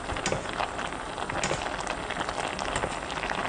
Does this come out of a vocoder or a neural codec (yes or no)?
no